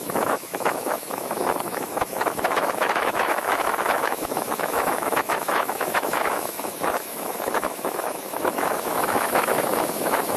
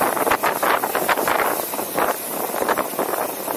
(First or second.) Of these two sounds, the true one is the second